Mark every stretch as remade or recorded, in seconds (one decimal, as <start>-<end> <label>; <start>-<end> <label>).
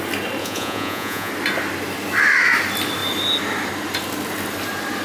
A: 0.0-0.4 recorded; 0.4-1.3 remade; 1.3-5.0 recorded